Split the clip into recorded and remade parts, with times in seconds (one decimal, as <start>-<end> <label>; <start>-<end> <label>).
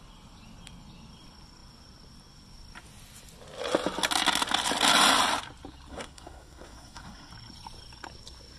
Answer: 0.0-5.9 recorded; 5.9-7.3 remade; 7.3-8.6 recorded